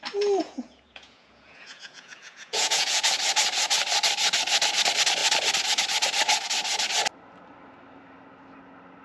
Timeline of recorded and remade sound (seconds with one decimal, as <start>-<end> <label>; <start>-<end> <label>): 0.0-0.4 recorded; 0.4-3.0 remade; 3.0-9.0 recorded